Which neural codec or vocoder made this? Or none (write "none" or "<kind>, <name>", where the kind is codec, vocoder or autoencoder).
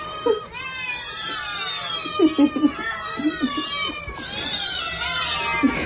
none